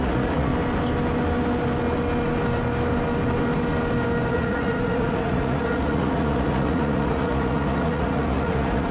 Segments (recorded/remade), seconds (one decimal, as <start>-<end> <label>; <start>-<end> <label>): 0.0-0.5 remade; 0.5-4.3 recorded; 4.3-8.9 remade